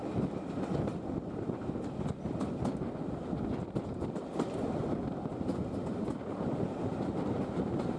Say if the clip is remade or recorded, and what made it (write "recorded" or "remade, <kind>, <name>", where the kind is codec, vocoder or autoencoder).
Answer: recorded